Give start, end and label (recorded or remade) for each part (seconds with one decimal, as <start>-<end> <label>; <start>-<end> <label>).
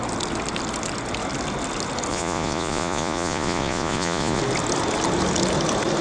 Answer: 0.0-2.1 recorded; 2.1-4.4 remade; 4.4-6.0 recorded